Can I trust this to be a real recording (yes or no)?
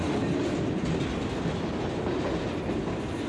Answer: yes